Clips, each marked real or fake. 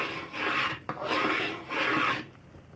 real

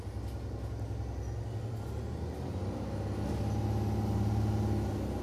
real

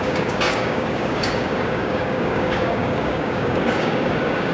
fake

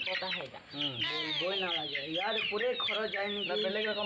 real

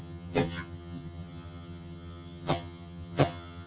fake